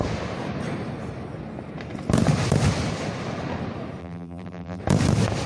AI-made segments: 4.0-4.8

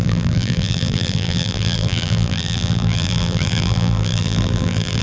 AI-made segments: 0.0-5.0